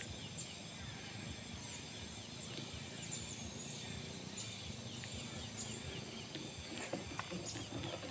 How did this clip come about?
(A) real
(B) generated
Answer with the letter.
A